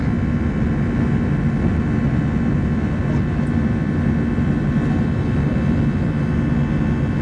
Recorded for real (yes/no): yes